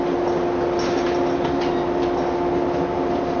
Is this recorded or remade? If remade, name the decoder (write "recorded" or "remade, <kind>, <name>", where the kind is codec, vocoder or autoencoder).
recorded